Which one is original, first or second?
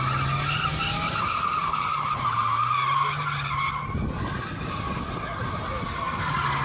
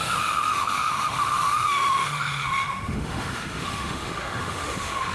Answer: first